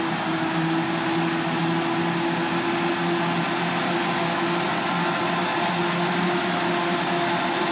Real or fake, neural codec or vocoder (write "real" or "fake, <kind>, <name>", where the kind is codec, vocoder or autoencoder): real